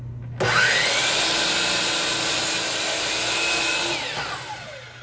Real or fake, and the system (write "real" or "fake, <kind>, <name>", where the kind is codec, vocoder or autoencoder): real